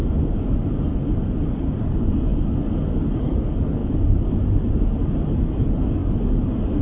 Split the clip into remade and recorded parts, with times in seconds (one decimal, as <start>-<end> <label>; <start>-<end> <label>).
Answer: 0.0-2.3 remade; 2.3-2.9 recorded; 2.9-3.8 remade; 3.8-5.5 recorded; 5.5-6.8 remade